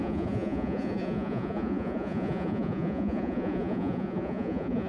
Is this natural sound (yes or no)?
no